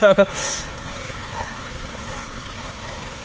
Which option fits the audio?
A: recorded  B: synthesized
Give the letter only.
B